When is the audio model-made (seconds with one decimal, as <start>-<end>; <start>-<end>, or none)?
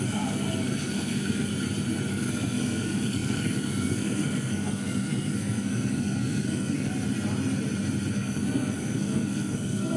0.0-1.5; 2.1-6.9; 8.1-10.0